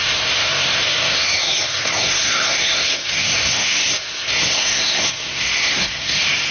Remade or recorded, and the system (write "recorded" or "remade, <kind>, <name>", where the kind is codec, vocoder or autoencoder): remade, codec, SNAC